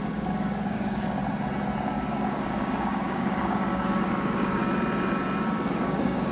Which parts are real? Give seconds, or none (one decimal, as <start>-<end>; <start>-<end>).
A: 1.2-1.8; 4.6-5.7